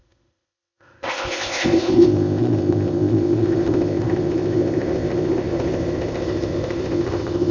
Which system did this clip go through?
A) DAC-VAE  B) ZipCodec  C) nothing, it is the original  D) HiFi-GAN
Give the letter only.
B